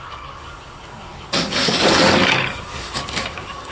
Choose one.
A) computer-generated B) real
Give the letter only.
A